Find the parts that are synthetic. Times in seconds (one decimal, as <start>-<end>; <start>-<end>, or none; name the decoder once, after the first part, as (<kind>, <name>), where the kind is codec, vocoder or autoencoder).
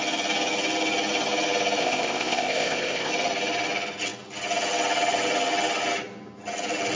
1.8-3.1 (codec, ZipCodec)